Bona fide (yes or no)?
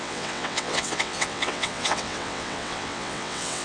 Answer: no